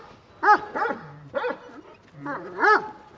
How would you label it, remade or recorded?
recorded